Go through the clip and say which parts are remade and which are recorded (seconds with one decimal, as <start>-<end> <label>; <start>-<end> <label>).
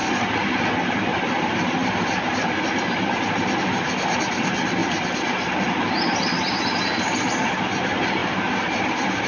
0.0-1.8 recorded; 1.8-3.2 remade; 3.2-4.8 recorded; 4.8-7.6 remade; 7.6-8.2 recorded; 8.2-9.3 remade